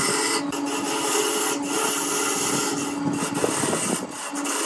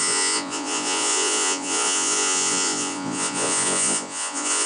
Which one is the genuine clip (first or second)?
first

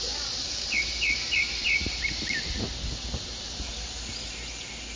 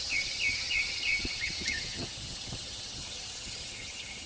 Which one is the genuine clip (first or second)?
first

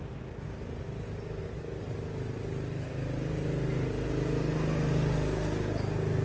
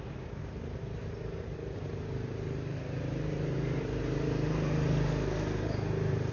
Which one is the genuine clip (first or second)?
first